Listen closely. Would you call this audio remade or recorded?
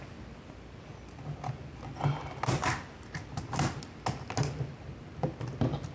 recorded